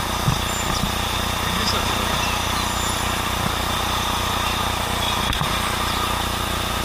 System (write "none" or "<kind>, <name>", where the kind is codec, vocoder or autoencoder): none